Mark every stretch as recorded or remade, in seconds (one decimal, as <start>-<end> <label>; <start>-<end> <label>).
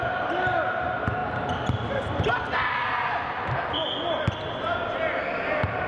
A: 0.0-5.9 recorded